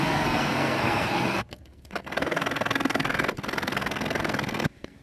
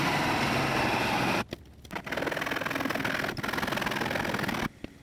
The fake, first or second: first